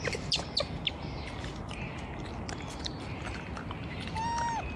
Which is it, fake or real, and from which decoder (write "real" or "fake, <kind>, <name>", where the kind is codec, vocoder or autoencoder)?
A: real